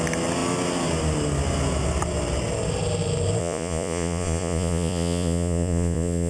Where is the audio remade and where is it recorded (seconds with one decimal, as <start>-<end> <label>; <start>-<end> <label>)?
0.0-3.4 recorded; 3.4-6.3 remade